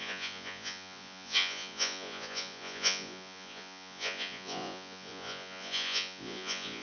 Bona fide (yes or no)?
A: no